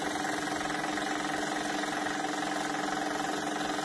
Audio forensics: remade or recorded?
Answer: recorded